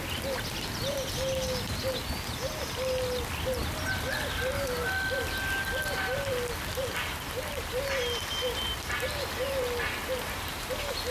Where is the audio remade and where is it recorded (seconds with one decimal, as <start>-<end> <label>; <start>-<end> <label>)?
0.0-10.0 recorded; 10.0-11.1 remade